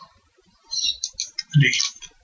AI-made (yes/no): no